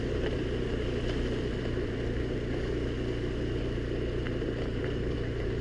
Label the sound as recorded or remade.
remade